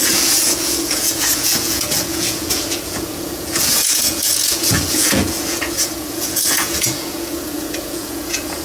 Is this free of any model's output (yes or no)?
no